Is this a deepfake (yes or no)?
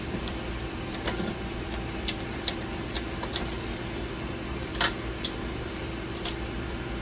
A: yes